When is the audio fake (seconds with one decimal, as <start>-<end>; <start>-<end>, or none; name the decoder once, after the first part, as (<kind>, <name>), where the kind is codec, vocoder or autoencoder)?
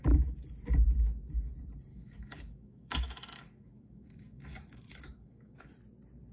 1.9-5.7 (autoencoder, DAC-VAE)